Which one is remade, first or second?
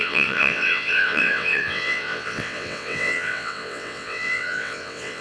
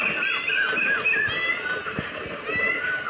first